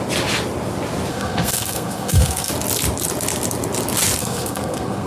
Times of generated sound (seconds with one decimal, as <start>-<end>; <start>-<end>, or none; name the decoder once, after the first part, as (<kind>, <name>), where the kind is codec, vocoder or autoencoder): 1.1-2.5 (codec, SNAC); 4.2-5.1